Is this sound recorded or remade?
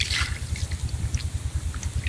recorded